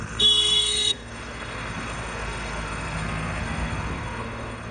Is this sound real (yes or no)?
no